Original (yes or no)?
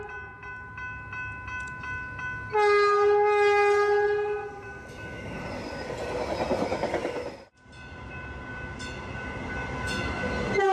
yes